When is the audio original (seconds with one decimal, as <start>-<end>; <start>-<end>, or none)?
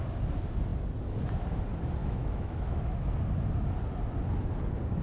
0.0-2.0; 3.1-5.0